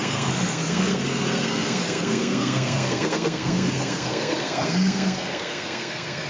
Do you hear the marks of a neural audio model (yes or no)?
yes